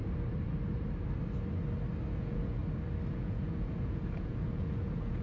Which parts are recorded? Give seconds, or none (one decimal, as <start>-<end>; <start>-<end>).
0.0-2.1; 2.6-3.1

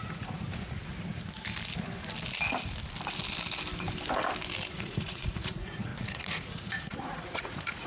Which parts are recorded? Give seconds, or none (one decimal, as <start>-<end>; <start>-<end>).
0.9-4.7